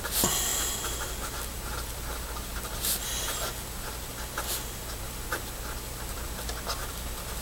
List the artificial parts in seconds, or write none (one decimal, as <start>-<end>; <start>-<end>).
none